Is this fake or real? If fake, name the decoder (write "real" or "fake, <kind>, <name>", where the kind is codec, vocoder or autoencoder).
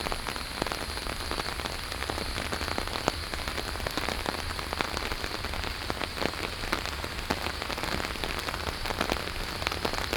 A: real